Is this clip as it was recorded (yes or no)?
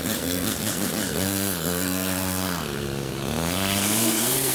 no